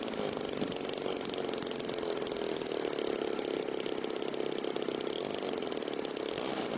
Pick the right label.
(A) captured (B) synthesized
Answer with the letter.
A